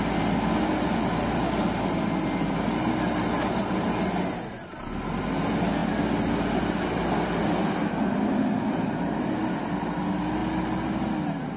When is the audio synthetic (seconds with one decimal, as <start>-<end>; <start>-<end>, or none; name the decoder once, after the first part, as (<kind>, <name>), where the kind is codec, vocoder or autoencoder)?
none